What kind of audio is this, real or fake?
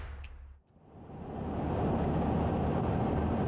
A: real